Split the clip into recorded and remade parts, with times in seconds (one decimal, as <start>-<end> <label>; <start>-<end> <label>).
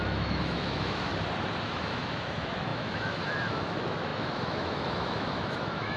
0.0-1.1 remade; 1.1-1.6 recorded; 1.6-6.0 remade